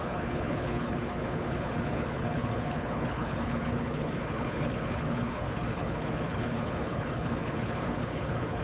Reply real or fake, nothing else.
fake